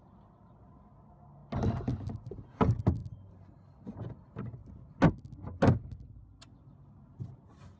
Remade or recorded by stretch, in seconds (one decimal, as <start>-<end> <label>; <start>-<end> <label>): 0.0-7.8 recorded